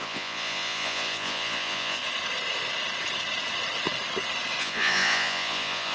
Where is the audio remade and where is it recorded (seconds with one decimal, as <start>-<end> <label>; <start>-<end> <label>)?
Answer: 0.0-2.0 remade; 2.0-4.6 recorded; 4.6-5.9 remade